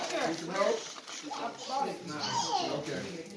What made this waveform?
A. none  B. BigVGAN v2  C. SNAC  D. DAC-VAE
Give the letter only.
A